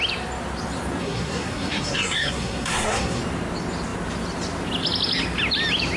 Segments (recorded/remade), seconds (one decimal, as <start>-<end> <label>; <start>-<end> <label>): 0.0-1.0 recorded; 1.0-3.2 remade; 3.2-6.0 recorded